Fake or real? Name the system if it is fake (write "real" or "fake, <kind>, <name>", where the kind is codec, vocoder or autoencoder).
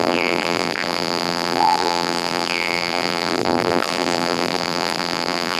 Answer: fake, vocoder, BigVGAN v2